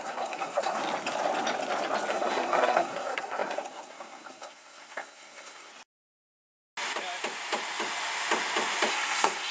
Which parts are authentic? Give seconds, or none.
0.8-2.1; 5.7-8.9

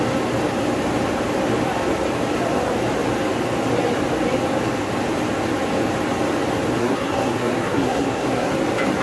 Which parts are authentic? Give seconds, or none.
0.0-6.8; 8.5-9.0

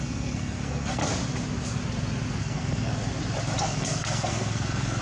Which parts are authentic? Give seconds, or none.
1.0-2.4; 2.9-3.6

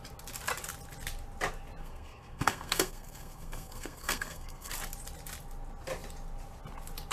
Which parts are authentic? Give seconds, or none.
0.0-1.8; 4.7-7.1

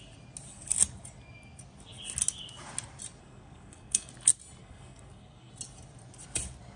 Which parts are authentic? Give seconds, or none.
0.0-3.2; 4.1-4.6; 5.5-6.8

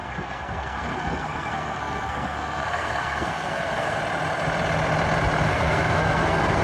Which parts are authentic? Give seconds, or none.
4.0-5.5

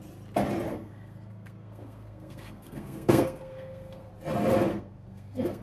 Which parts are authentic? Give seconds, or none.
0.0-0.7; 4.1-4.7

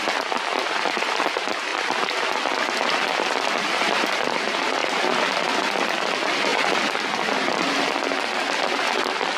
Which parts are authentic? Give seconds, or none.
0.0-9.4